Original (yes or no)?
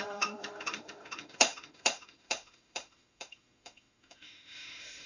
no